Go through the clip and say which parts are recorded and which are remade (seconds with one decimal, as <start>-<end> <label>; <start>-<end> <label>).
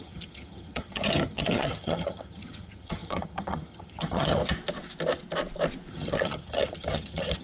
0.0-4.4 remade; 4.4-5.9 recorded; 5.9-7.4 remade